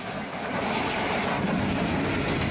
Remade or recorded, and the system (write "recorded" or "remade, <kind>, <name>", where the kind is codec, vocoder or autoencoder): recorded